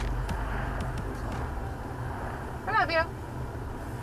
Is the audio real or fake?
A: real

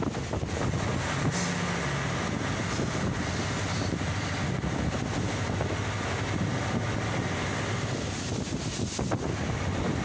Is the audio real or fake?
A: real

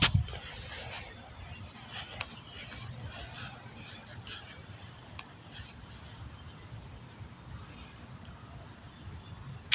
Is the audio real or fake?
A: real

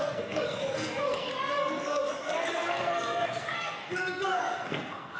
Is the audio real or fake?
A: fake